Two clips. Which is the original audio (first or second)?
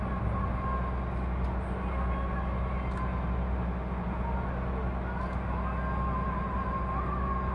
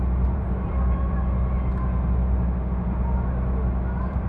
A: first